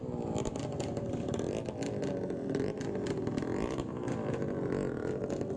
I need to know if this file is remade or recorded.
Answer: recorded